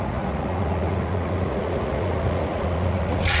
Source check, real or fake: fake